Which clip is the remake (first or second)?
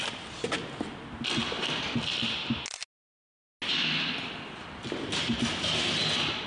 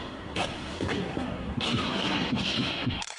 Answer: second